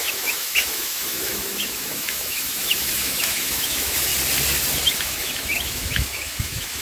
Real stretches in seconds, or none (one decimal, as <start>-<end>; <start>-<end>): 4.1-5.0